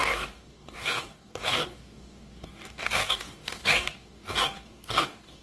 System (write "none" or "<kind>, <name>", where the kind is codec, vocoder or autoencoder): codec, DAC